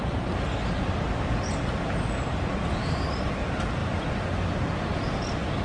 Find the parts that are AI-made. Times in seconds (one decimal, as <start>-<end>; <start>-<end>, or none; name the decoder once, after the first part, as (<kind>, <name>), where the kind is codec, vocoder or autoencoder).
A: none